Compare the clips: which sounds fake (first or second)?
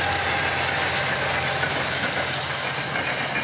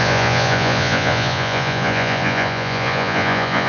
second